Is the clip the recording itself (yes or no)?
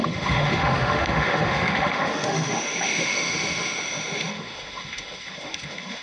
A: no